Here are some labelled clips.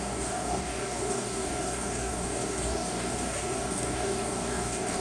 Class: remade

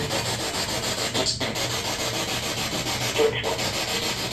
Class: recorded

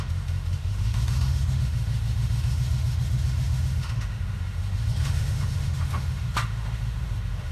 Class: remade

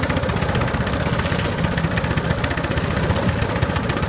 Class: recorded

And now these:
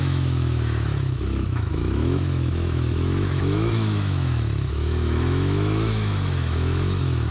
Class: remade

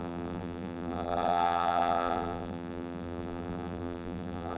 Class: remade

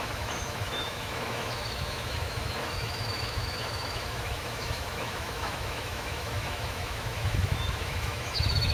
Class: remade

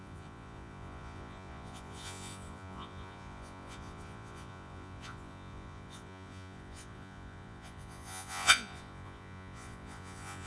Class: remade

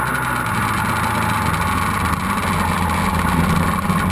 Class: recorded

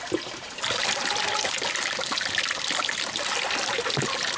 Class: recorded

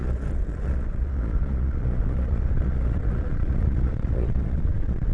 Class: remade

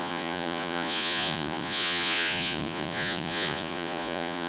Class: remade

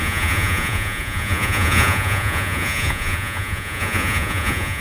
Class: remade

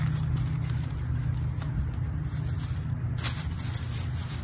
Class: recorded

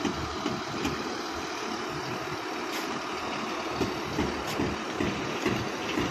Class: recorded